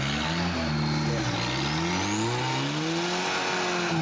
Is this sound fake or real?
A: real